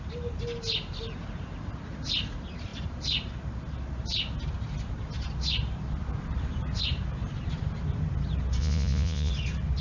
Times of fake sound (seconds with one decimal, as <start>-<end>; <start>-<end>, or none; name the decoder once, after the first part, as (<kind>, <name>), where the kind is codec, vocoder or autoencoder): 8.6-9.3 (vocoder, Vocos)